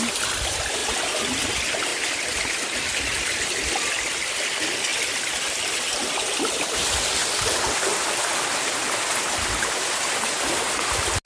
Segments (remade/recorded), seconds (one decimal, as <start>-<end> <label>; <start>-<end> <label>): 0.0-0.8 recorded; 0.8-1.5 remade; 1.5-1.9 recorded; 1.9-3.9 remade; 3.9-4.9 recorded; 4.9-6.6 remade; 6.6-7.2 recorded; 7.2-8.2 remade; 8.2-11.3 recorded